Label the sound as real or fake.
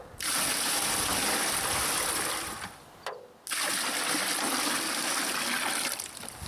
real